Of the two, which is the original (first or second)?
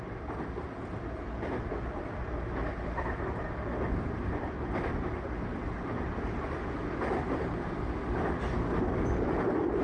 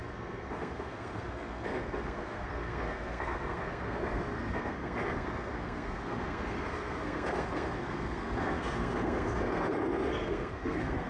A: first